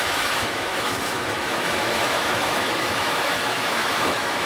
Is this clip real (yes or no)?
no